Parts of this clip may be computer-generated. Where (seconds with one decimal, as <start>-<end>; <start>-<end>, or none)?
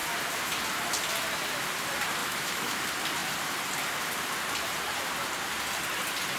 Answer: 2.2-2.8